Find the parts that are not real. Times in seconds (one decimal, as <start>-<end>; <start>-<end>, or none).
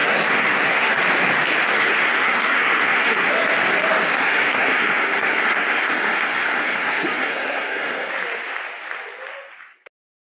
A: 0.0-1.0; 1.7-3.3; 4.2-8.1